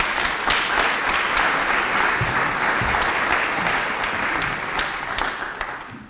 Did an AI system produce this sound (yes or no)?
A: no